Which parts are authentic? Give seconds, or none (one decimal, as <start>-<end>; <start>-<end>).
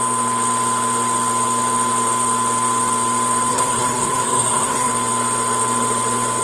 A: 0.0-3.5; 4.9-6.4